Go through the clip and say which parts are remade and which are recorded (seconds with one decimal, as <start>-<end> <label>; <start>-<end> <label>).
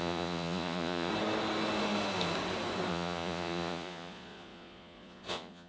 0.0-1.1 remade; 1.1-2.9 recorded; 2.9-5.7 remade